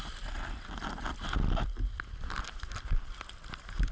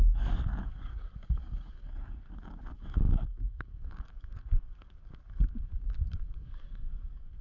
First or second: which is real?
first